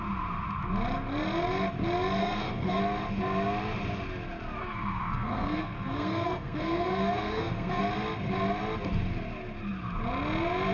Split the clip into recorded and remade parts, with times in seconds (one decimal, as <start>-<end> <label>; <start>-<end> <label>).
0.0-2.2 recorded; 2.2-2.8 remade; 2.8-4.6 recorded; 4.6-7.8 remade; 7.8-10.7 recorded